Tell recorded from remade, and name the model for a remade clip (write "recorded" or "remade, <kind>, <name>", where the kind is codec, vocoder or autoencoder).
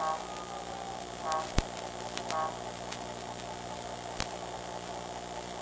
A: recorded